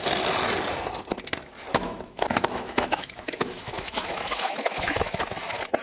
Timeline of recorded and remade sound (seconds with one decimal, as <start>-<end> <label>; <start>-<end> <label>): 0.0-1.7 recorded; 1.7-5.2 remade; 5.2-5.8 recorded